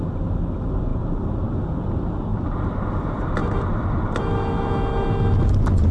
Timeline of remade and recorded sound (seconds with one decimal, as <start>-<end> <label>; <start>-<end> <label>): 0.0-0.9 recorded; 0.9-1.5 remade; 1.5-2.3 recorded; 2.3-3.0 remade; 3.0-3.4 recorded; 3.4-4.7 remade; 4.7-5.9 recorded